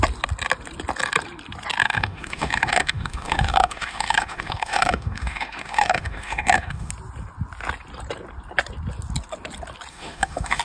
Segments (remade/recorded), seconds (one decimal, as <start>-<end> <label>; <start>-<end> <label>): 0.0-1.8 recorded; 1.8-6.9 remade; 6.9-9.9 recorded; 9.9-10.6 remade